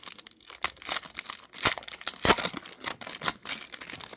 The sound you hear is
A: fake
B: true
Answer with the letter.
B